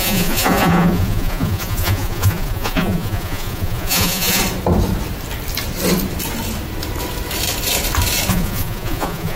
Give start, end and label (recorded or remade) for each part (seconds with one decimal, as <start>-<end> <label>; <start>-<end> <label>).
0.0-4.4 remade; 4.4-8.3 recorded; 8.3-9.4 remade